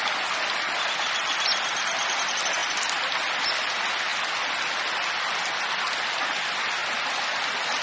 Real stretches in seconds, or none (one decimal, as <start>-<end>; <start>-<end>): 0.0-7.8